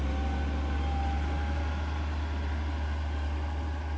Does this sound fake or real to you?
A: real